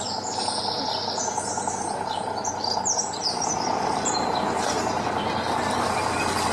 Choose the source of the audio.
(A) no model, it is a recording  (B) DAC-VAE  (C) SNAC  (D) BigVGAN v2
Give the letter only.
A